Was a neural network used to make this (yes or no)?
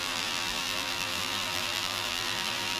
yes